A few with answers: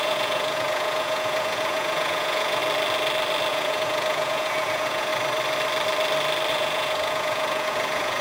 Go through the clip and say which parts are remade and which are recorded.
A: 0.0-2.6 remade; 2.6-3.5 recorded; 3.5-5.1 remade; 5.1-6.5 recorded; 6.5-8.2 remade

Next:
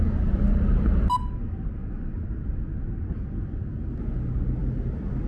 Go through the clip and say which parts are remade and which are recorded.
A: 0.0-5.3 recorded